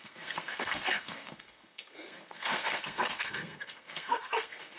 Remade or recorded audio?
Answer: remade